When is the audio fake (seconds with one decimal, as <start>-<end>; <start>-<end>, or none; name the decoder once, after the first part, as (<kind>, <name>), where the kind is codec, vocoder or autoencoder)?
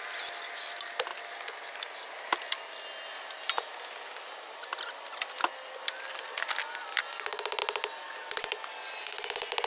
none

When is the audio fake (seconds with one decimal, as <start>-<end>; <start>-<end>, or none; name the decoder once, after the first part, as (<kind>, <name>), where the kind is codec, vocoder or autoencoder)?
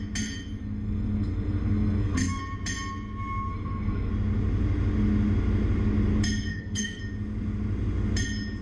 0.6-2.4 (codec, SNAC); 3.5-4.1; 6.5-7.0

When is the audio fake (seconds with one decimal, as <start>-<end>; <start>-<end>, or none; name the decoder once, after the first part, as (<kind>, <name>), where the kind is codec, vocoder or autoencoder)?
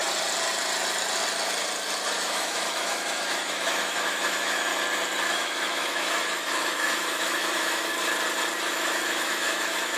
2.1-4.7 (autoencoder, DAC-VAE); 5.3-7.9; 8.7-10.0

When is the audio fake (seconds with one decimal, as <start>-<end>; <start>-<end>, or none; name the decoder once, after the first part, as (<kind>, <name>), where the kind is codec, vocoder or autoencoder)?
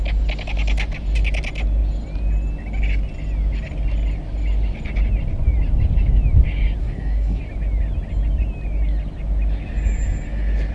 6.8-7.4 (codec, SNAC)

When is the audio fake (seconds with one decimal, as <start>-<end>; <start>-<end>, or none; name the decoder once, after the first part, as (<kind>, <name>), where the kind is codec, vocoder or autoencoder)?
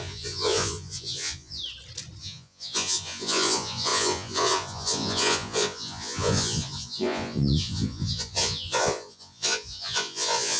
0.0-1.6 (vocoder, Vocos); 2.2-10.6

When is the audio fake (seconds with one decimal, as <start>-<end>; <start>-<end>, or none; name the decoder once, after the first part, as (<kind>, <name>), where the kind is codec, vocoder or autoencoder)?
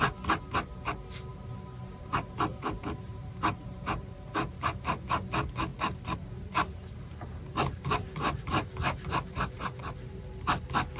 1.3-4.8 (vocoder, BigVGAN v2); 5.7-10.6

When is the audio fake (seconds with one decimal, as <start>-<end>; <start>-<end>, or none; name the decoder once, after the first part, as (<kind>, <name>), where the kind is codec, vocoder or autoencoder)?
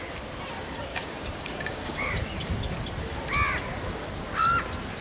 0.9-2.1 (codec, DAC)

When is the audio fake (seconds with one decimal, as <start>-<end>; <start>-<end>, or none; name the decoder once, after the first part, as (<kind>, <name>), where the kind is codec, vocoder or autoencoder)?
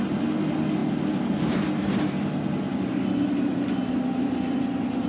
none